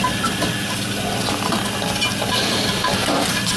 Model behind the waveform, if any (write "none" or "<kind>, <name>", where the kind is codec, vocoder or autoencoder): none